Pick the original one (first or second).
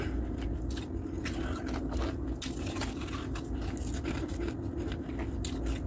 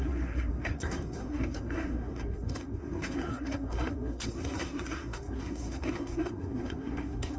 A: first